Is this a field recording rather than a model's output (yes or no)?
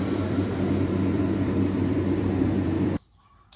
no